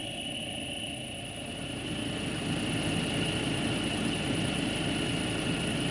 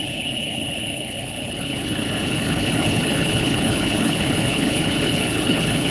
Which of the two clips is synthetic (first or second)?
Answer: second